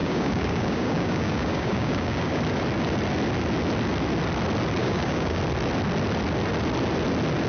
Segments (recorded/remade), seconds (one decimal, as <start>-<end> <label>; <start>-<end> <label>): 0.0-2.4 remade; 2.4-4.8 recorded; 4.8-5.4 remade; 5.4-7.5 recorded